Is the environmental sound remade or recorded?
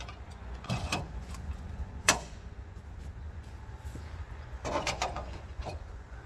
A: remade